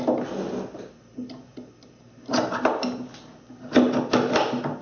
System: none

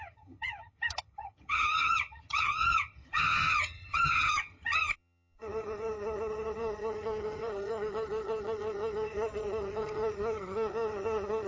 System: vocoder, HiFi-GAN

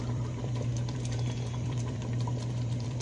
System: vocoder, BigVGAN v2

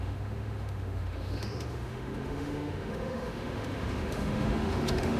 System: autoencoder, DAC-VAE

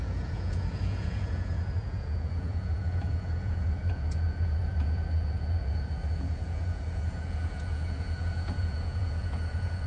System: vocoder, Vocos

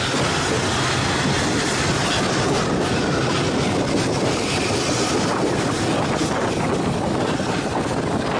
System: none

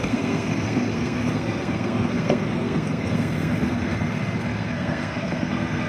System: codec, SNAC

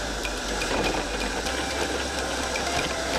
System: vocoder, BigVGAN v2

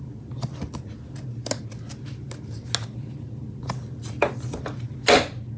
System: none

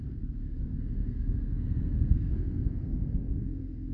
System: codec, SNAC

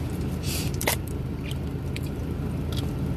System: vocoder, BigVGAN v2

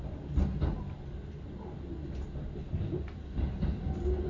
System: none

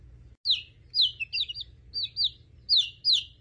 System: none